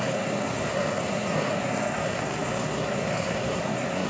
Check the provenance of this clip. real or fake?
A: fake